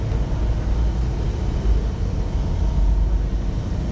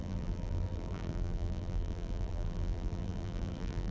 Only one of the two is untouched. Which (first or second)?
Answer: first